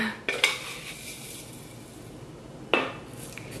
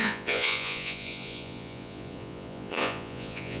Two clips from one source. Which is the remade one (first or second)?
second